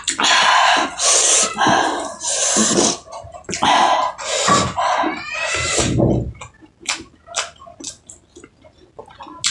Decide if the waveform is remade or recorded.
recorded